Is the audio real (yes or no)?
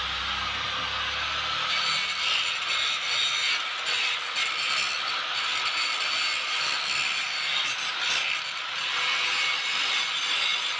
yes